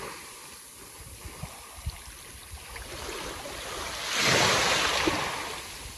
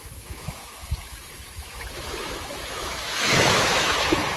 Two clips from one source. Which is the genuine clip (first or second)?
first